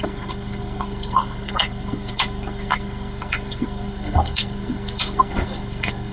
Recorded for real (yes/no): no